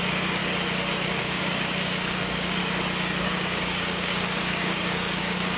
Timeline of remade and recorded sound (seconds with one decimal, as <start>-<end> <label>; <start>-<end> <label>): 0.0-0.4 remade; 0.4-1.2 recorded; 1.2-2.6 remade; 2.6-3.2 recorded; 3.2-5.6 remade